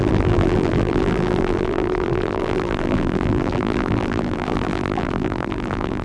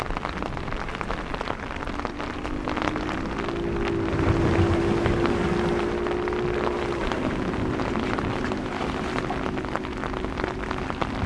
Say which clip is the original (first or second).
second